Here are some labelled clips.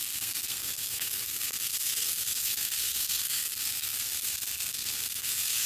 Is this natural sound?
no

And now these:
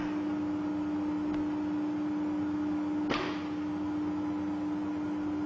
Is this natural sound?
yes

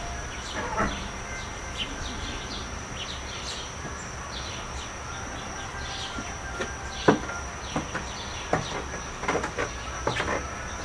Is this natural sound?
no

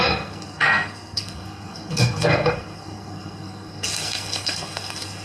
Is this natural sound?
no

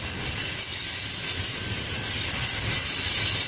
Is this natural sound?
yes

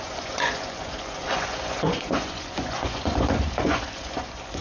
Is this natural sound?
no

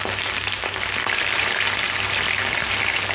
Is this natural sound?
no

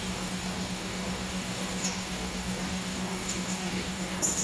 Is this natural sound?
no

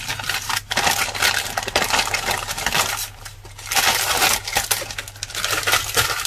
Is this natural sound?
yes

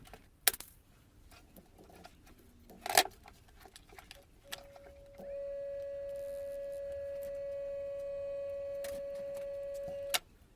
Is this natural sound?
yes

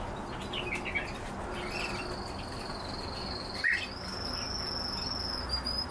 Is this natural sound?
yes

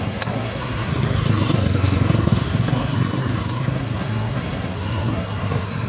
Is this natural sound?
no